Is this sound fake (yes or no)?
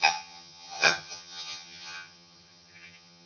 yes